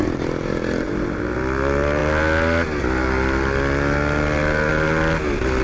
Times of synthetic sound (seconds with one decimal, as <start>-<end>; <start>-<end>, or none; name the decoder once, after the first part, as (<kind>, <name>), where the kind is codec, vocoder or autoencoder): none